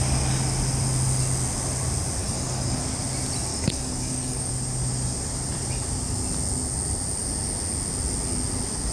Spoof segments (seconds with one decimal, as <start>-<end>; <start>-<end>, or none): 2.2-2.8; 3.5-4.5